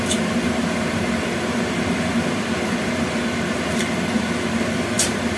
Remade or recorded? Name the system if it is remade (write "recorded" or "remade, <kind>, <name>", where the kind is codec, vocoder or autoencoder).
remade, vocoder, BigVGAN v2